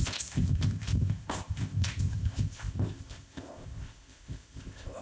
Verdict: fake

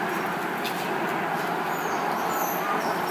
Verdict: real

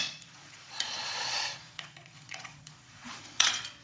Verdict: fake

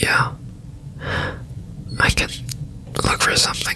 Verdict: fake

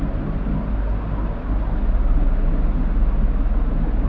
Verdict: real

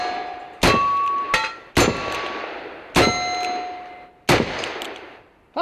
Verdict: real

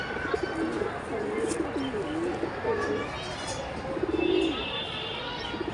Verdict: real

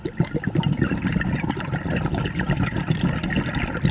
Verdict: real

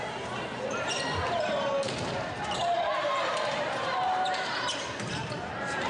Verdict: fake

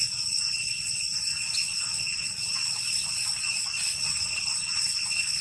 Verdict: fake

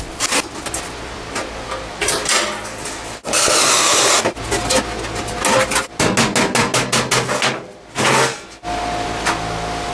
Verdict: real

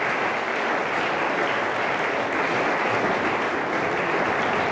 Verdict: real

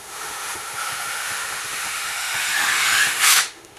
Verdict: fake